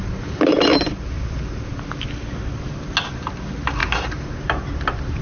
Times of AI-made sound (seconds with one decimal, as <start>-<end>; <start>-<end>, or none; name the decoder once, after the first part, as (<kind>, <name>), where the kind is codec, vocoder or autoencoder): 0.0-1.7 (vocoder, BigVGAN v2); 3.8-5.2